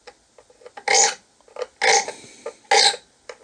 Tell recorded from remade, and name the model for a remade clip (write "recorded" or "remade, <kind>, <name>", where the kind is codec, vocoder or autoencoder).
recorded